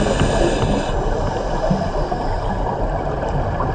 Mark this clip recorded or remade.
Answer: recorded